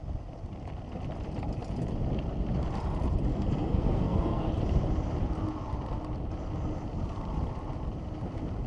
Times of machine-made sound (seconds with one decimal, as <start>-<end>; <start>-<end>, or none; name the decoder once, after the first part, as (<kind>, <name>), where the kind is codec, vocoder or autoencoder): 3.3-4.5 (codec, SNAC)